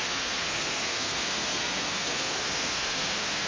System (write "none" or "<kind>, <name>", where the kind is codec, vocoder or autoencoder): codec, SNAC